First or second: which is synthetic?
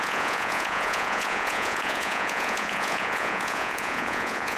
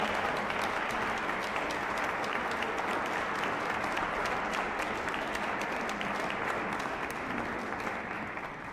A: first